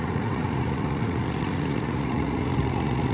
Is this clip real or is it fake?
fake